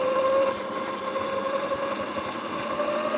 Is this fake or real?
real